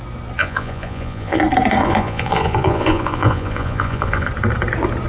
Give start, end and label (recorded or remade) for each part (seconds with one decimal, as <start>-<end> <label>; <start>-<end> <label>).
0.0-0.4 recorded; 0.4-1.4 remade; 1.4-1.8 recorded; 1.8-4.3 remade; 4.3-5.1 recorded